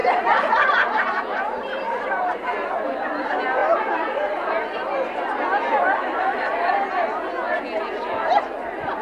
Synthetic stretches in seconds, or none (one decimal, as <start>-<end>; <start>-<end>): 0.0-2.7

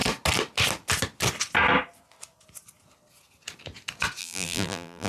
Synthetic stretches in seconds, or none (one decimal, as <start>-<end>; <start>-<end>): 4.2-5.1

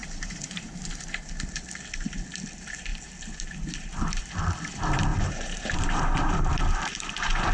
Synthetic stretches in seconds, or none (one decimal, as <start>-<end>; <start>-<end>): 0.0-0.9; 5.1-6.6

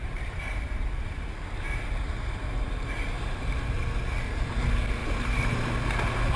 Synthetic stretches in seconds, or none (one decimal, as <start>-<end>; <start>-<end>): 0.0-3.8; 5.0-5.5

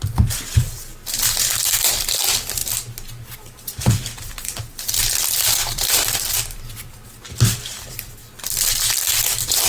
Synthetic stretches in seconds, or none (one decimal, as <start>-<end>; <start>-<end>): 0.0-0.9; 1.5-2.6; 3.7-5.0; 5.7-8.2; 8.9-9.7

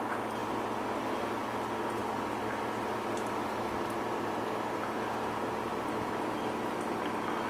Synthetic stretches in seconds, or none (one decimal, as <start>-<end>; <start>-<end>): none

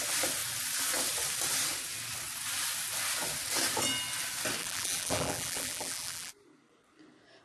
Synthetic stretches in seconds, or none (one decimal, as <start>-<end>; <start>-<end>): 4.6-6.3